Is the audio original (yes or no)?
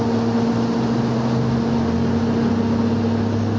yes